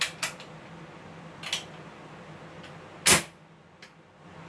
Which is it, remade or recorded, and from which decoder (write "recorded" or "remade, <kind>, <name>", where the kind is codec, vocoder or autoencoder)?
recorded